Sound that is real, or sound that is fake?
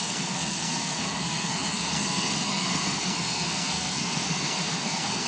fake